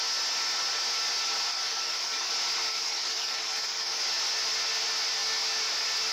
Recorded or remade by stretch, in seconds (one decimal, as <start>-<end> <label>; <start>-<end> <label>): 0.0-1.5 recorded; 1.5-2.3 remade; 2.3-2.7 recorded; 2.7-4.0 remade; 4.0-6.1 recorded